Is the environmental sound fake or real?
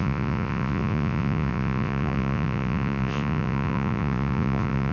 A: fake